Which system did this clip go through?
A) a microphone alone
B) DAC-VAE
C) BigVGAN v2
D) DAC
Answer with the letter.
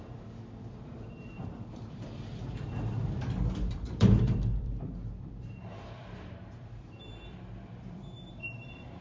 C